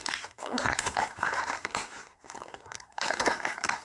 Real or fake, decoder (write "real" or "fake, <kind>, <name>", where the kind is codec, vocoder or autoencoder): fake, codec, SNAC